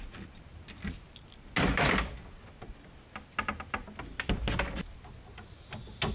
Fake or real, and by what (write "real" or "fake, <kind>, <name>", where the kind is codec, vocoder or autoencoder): real